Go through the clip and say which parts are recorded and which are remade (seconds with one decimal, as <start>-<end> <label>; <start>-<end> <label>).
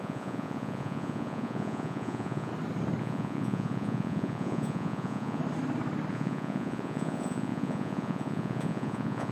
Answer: 0.0-2.5 remade; 2.5-3.0 recorded; 3.0-5.4 remade; 5.4-6.1 recorded; 6.1-9.3 remade